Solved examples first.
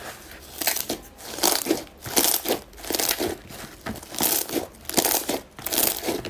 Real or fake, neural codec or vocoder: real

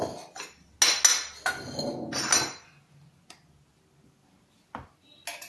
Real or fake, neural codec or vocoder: real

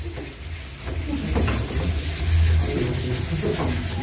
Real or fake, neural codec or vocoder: real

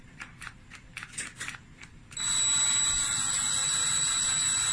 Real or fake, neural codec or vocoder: real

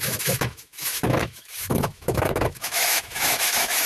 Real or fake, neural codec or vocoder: fake, autoencoder, DAC-VAE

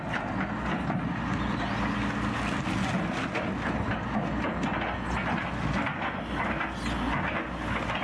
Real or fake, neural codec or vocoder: real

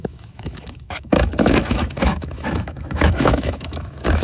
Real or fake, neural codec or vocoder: fake, autoencoder, DAC-VAE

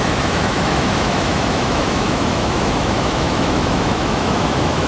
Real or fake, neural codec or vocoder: fake, autoencoder, DAC-VAE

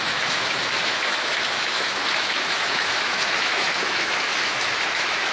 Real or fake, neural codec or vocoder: fake, autoencoder, DAC-VAE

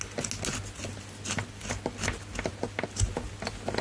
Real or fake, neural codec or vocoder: real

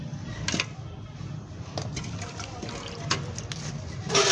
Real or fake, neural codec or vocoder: real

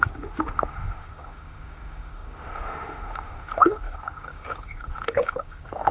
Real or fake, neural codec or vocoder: fake, autoencoder, DAC-VAE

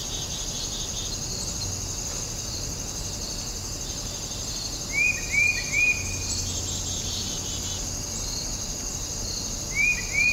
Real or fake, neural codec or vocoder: real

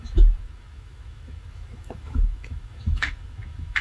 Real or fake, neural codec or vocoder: fake, autoencoder, DAC-VAE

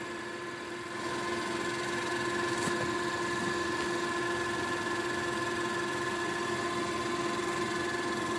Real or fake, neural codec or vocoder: real